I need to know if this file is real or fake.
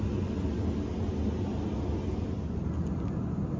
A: real